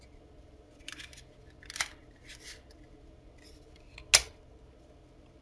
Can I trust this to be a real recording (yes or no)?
yes